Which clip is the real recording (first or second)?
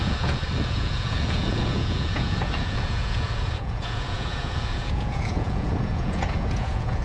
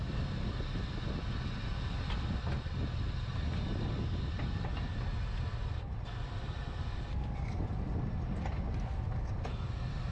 second